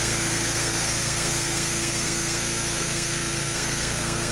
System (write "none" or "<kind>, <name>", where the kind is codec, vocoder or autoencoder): codec, SNAC